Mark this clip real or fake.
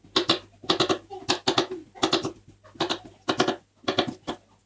real